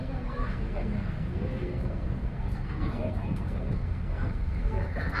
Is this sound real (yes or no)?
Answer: no